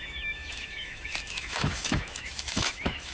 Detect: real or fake fake